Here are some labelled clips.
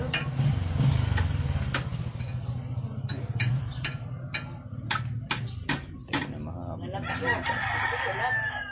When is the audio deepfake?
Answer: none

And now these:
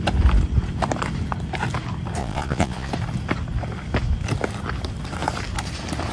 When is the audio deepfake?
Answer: 2.2-2.9 (vocoder, Vocos)

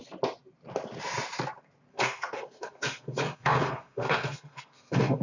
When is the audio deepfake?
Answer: 1.9-5.2 (codec, SNAC)

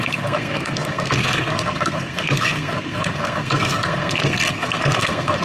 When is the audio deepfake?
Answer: 0.0-5.4 (codec, SNAC)

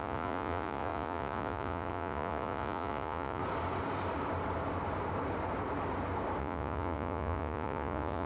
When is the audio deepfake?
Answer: 0.0-3.4 (vocoder, Vocos); 6.4-8.3

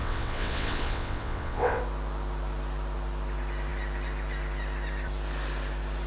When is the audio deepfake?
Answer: 0.0-1.8 (vocoder, WaveNeXt)

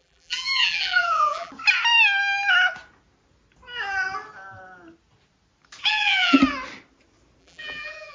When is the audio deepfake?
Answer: 0.0-1.5 (vocoder, BigVGAN v2); 5.9-6.4; 7.4-8.1

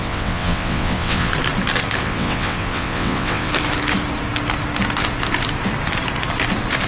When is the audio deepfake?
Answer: 0.0-1.3 (vocoder, WaveNeXt); 2.0-3.5